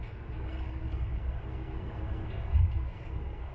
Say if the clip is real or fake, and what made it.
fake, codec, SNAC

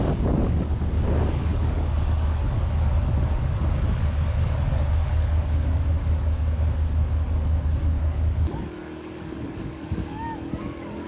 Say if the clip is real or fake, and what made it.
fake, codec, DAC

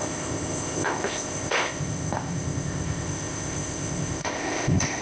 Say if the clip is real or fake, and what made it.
fake, codec, ZipCodec